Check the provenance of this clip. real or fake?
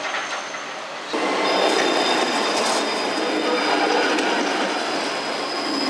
real